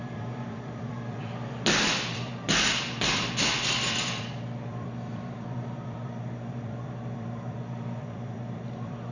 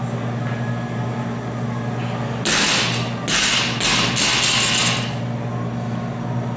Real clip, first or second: second